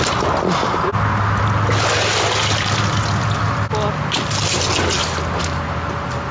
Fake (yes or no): no